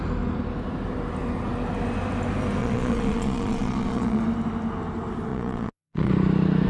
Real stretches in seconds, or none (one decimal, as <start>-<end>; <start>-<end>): 0.0-2.6; 4.2-5.3; 6.1-6.7